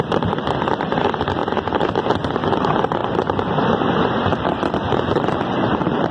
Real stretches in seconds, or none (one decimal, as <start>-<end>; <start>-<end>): 3.0-3.6